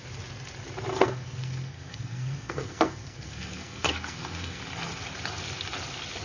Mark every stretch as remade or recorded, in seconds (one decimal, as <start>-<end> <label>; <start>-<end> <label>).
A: 0.0-0.9 recorded; 0.9-4.6 remade; 4.6-6.2 recorded